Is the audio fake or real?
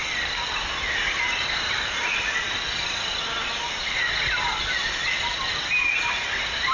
real